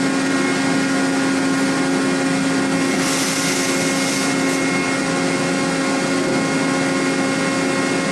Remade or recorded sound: recorded